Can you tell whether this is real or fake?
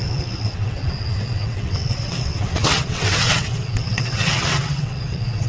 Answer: fake